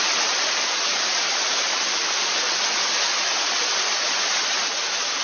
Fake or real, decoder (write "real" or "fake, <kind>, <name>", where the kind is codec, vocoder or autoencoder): real